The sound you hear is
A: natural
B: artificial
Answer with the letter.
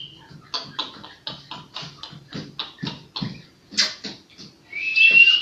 A